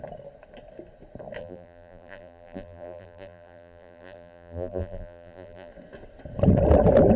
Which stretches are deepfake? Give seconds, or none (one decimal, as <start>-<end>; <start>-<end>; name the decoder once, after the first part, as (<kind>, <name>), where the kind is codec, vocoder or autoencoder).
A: 1.4-5.7 (vocoder, BigVGAN v2)

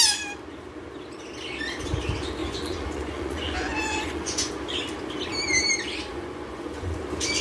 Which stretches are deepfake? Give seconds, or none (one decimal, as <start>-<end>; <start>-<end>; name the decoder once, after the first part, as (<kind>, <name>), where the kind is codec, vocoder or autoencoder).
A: 2.4-4.5 (vocoder, Vocos); 6.1-7.0

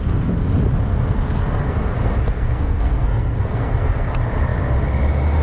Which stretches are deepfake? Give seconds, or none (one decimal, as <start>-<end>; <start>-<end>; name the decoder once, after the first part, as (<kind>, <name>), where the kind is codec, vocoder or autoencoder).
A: 0.9-4.1 (codec, SNAC)